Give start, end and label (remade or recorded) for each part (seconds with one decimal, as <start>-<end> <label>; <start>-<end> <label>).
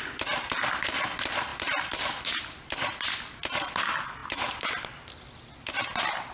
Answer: 0.0-1.5 recorded; 1.5-2.9 remade; 2.9-4.2 recorded; 4.2-5.8 remade; 5.8-6.3 recorded